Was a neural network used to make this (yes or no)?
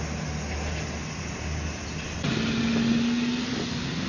no